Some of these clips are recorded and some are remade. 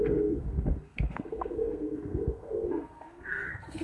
remade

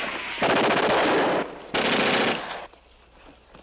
recorded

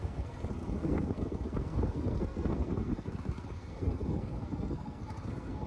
remade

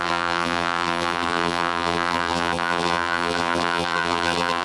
remade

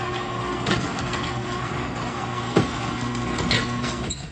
remade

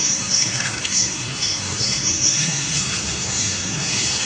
remade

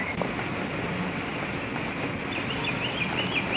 recorded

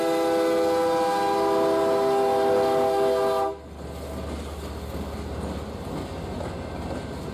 recorded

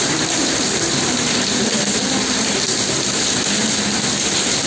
remade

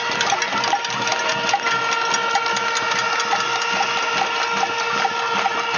recorded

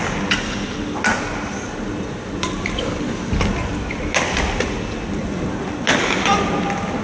recorded